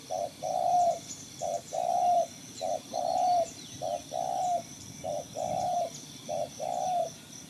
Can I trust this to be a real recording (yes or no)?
yes